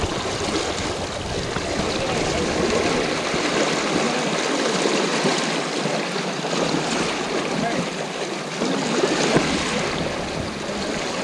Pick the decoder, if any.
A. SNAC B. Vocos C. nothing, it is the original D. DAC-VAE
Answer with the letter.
C